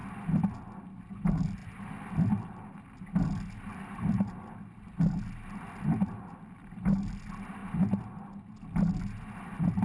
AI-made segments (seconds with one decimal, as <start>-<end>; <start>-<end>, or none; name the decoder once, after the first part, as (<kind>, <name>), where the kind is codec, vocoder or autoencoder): none